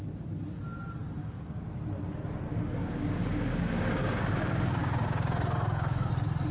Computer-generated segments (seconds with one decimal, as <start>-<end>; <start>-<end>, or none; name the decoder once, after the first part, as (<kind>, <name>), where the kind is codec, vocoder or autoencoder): 1.2-1.7 (codec, DAC); 2.8-6.1

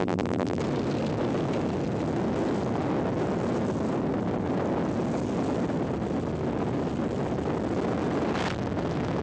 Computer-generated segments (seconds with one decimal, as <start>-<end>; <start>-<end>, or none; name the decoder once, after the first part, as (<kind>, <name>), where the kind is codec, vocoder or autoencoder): 0.0-0.6 (vocoder, BigVGAN v2)

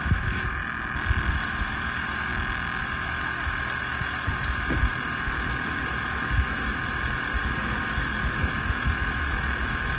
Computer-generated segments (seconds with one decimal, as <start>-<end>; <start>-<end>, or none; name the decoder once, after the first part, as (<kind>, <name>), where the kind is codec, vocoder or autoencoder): 0.0-0.6 (autoencoder, DAC-VAE); 1.3-2.3; 2.8-10.0

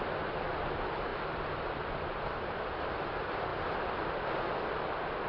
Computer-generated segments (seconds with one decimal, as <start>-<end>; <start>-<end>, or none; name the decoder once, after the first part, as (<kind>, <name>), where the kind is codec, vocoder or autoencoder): 0.0-3.5 (vocoder, BigVGAN v2); 4.5-5.3

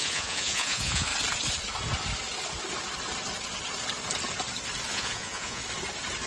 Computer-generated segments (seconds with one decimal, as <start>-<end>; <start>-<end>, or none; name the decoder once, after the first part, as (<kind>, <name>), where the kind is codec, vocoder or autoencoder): 0.0-1.1 (vocoder, Vocos); 4.9-5.6

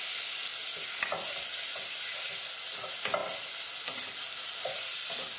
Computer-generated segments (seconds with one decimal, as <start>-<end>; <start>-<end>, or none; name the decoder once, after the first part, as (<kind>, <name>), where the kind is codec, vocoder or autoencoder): none